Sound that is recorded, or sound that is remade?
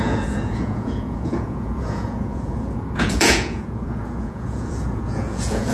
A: remade